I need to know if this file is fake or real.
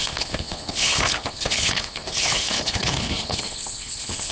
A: fake